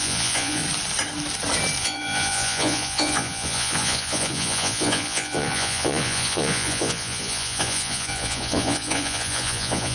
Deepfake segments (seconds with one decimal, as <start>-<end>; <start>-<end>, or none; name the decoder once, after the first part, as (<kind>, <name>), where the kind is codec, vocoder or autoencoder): 0.0-0.6 (vocoder, Vocos); 1.8-9.9